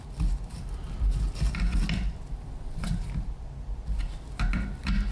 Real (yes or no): yes